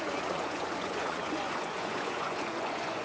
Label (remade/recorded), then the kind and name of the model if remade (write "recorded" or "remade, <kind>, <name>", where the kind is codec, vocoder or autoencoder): remade, vocoder, Vocos